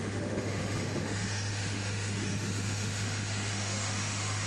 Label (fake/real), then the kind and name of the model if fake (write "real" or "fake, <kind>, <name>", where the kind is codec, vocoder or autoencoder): fake, autoencoder, DAC-VAE